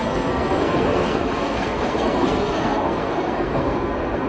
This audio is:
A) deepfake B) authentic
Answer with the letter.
A